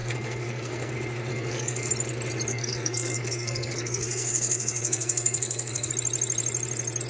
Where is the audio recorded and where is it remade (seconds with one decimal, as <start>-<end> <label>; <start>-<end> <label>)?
0.0-0.9 remade; 0.9-1.3 recorded; 1.3-1.9 remade; 1.9-2.5 recorded; 2.5-5.9 remade; 5.9-7.1 recorded